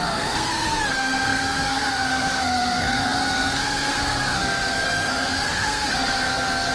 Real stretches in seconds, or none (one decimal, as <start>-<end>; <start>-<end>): none